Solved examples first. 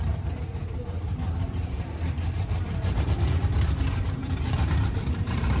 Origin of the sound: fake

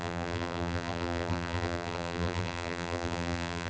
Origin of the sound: fake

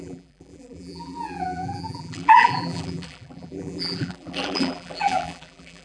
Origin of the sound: fake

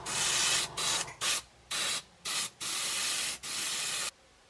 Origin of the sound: real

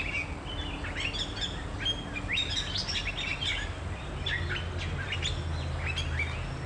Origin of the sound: real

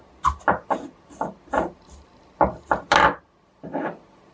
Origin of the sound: real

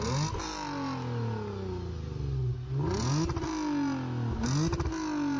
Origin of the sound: real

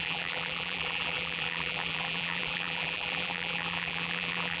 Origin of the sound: fake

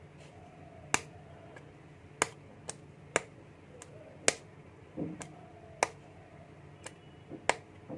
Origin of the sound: real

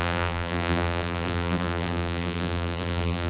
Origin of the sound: fake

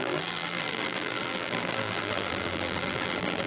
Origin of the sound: fake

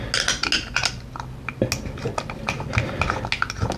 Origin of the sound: real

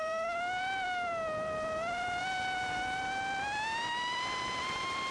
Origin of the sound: fake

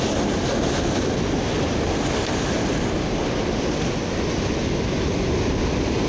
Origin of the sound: real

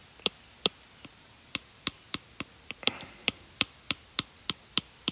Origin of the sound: fake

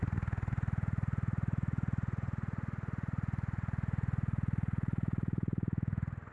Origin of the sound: fake